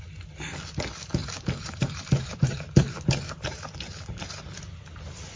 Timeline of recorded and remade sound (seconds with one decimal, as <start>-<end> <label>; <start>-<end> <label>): 0.0-1.2 recorded; 1.2-4.4 remade; 4.4-5.4 recorded